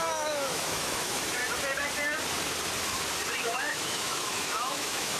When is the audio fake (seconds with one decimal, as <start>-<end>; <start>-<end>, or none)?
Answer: 0.0-1.4; 3.4-5.2